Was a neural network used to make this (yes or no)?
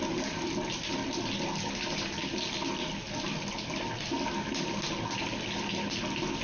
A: no